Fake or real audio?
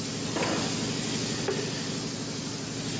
real